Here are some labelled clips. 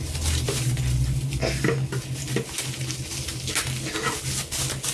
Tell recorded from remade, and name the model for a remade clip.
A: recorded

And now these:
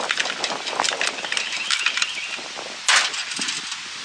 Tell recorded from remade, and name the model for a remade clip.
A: recorded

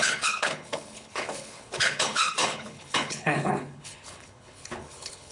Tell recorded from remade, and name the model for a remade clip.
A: remade, codec, HILCodec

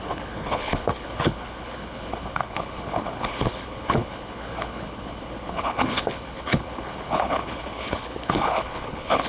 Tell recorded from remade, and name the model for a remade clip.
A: remade, codec, HILCodec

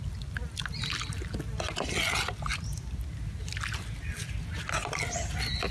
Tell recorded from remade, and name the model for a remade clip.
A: recorded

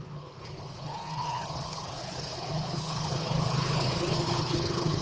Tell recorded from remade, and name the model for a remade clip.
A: remade, codec, HILCodec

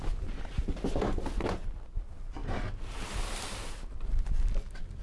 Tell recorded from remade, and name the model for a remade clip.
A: recorded